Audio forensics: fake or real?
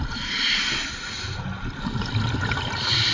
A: real